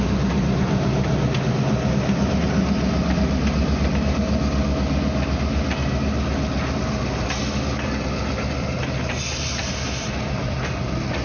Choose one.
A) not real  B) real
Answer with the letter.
B